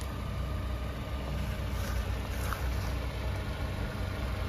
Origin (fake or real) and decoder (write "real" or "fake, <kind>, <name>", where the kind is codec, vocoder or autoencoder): real